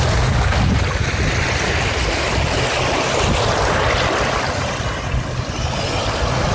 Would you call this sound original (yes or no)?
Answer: yes